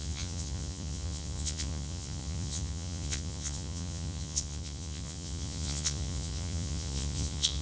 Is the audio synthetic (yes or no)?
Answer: yes